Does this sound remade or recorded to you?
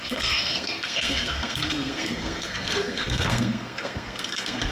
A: remade